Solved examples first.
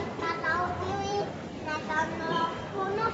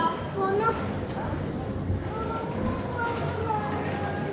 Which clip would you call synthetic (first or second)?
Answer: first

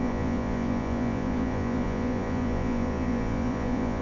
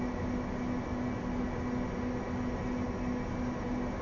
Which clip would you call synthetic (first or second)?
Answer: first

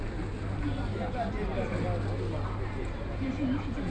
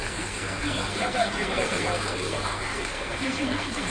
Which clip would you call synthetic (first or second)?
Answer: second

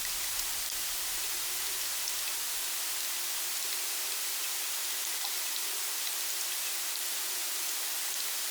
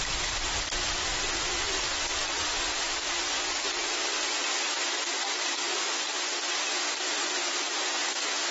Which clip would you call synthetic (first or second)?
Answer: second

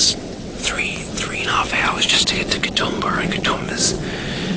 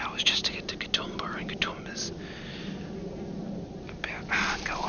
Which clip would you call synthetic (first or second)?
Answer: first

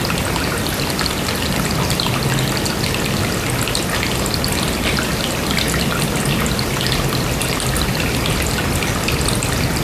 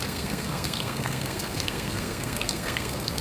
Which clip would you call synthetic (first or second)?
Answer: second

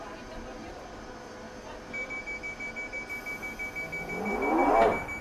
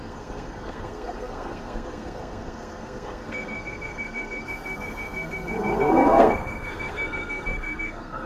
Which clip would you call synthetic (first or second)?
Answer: second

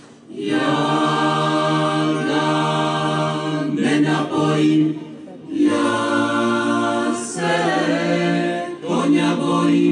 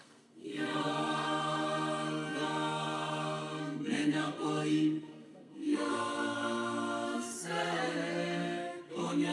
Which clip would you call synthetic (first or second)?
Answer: second